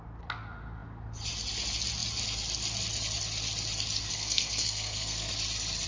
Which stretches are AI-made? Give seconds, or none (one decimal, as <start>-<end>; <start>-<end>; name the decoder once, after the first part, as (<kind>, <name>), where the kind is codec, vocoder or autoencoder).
4.1-5.3 (codec, SNAC)

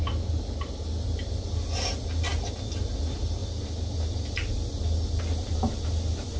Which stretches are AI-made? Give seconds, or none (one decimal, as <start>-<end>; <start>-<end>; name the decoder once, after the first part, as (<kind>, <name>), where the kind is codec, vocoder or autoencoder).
none

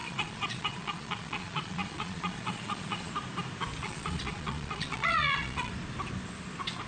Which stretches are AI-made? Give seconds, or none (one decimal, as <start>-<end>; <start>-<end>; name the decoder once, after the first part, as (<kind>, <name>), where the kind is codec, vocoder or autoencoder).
0.0-3.1 (vocoder, Vocos); 3.8-5.7

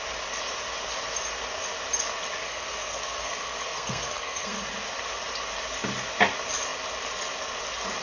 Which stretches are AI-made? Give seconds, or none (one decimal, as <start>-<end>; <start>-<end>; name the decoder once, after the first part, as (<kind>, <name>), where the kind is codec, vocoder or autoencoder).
2.4-4.6 (codec, SNAC)

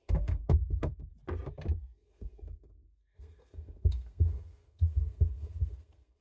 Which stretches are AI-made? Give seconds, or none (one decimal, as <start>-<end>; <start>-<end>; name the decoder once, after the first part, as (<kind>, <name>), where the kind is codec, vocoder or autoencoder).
0.0-1.1 (codec, SNAC); 1.8-6.2

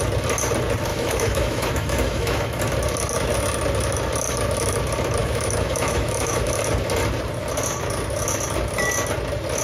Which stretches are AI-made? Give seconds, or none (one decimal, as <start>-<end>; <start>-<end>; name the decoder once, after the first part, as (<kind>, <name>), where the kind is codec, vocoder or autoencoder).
0.9-2.6 (autoencoder, DAC-VAE); 5.2-6.6

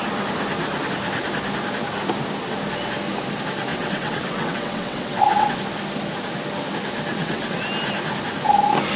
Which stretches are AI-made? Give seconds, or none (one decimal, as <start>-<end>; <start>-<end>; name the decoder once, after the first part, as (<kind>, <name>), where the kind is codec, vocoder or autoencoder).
3.7-5.6 (vocoder, WaveNeXt); 7.1-7.6